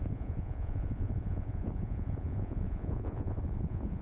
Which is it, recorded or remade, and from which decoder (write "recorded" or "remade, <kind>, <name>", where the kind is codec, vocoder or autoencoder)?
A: remade, vocoder, Vocos